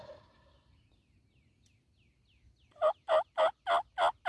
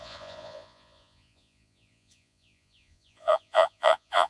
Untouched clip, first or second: first